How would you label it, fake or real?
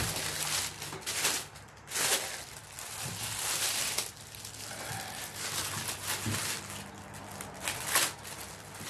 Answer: real